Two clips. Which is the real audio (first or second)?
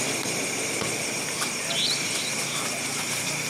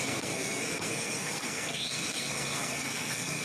first